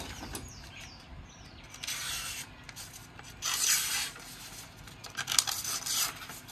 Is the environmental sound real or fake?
real